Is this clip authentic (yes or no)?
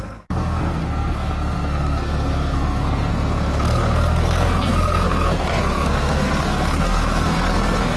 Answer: no